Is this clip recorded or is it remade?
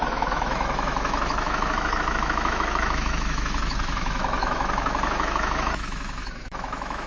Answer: remade